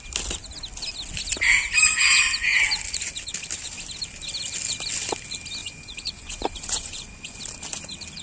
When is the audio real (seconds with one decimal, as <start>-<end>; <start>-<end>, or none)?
0.0-5.6; 7.4-8.2